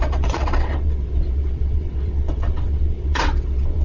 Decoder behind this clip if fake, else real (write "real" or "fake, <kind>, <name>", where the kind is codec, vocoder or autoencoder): fake, vocoder, WaveNeXt